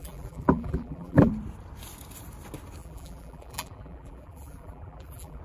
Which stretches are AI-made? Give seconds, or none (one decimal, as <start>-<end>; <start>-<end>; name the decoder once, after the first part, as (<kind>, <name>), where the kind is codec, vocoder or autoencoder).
0.0-1.3 (vocoder, BigVGAN v2); 2.8-5.4